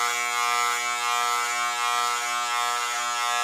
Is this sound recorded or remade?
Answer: recorded